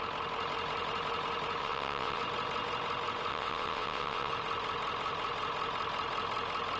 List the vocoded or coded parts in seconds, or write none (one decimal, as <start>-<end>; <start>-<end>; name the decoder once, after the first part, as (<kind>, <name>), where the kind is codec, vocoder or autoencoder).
1.6-2.2 (vocoder, WaveNeXt); 3.3-4.3